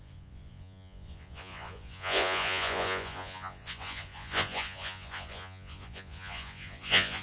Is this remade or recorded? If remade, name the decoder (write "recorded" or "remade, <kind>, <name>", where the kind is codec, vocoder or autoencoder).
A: remade, vocoder, Vocos